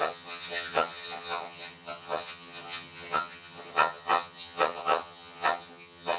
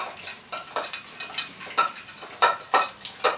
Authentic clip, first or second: second